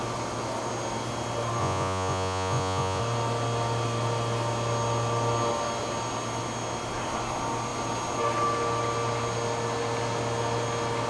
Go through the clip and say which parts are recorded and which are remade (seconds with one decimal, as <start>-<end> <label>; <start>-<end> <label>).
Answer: 0.0-1.6 recorded; 1.6-3.0 remade; 3.0-11.1 recorded